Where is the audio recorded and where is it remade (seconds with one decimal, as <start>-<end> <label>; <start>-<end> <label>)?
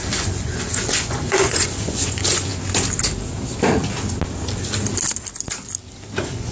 0.0-2.5 remade; 2.5-6.0 recorded; 6.0-6.5 remade